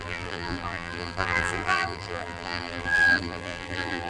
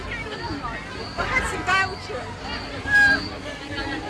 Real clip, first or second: second